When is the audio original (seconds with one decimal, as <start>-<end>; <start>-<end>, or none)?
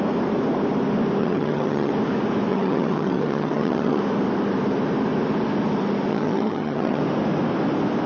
0.0-1.2; 1.9-2.5; 4.0-6.1; 7.0-8.1